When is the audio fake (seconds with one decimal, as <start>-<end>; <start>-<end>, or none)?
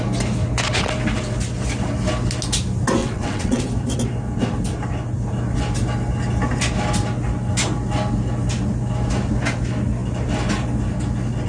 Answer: 3.0-3.6